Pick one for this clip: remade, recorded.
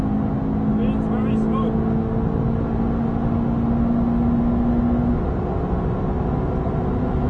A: recorded